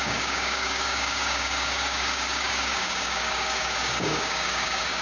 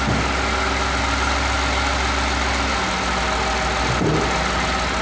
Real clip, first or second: second